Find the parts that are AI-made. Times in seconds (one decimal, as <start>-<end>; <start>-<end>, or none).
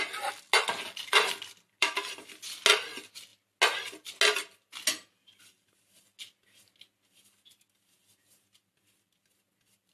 1.8-2.3